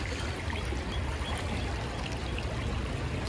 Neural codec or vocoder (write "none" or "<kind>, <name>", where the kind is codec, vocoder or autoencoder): none